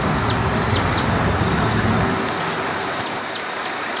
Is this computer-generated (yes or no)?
no